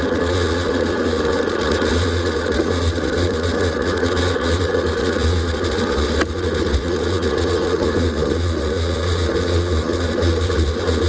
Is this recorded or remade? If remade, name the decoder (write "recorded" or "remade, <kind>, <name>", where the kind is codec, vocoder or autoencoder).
remade, vocoder, Vocos